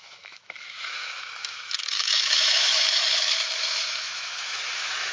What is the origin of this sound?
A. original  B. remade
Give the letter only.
B